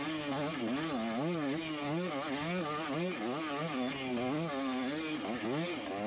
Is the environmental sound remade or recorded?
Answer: recorded